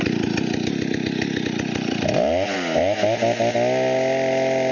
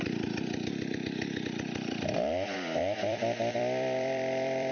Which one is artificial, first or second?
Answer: second